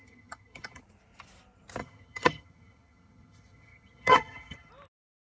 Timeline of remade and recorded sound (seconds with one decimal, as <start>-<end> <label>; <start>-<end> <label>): 0.0-0.8 remade; 0.8-1.8 recorded; 1.8-4.7 remade; 4.7-5.3 recorded